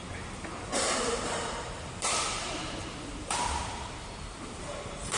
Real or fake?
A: fake